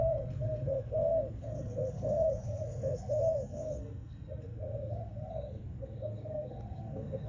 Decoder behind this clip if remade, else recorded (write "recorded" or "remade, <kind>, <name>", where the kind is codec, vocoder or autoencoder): remade, codec, SNAC